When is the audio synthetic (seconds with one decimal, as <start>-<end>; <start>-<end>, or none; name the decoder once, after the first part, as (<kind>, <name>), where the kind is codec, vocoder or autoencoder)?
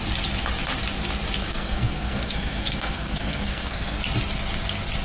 1.4-4.0 (codec, SNAC)